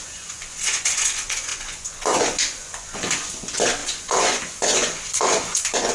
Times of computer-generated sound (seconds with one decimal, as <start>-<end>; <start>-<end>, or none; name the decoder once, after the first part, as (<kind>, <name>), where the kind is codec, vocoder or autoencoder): 0.0-5.9 (vocoder, Vocos)